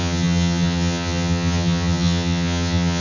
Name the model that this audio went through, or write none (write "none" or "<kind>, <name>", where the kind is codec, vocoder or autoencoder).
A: vocoder, HiFi-GAN